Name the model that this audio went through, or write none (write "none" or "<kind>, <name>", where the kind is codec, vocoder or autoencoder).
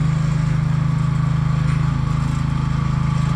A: none